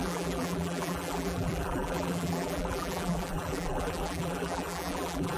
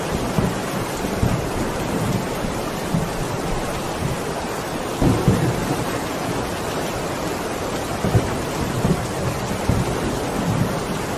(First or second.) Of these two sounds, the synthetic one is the first